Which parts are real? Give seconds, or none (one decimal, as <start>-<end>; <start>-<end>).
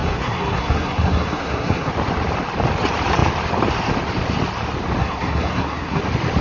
1.9-5.0; 6.0-6.4